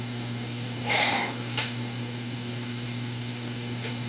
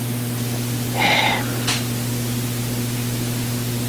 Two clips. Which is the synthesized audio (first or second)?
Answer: first